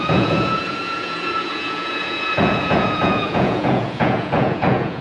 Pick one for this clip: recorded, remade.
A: remade